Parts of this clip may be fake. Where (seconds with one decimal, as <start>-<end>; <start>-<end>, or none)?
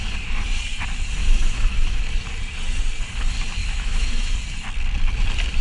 1.2-2.0; 3.6-4.3